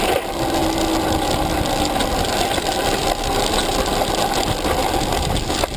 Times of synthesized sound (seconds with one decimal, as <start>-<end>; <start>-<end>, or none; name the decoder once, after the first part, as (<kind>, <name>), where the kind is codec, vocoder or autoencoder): none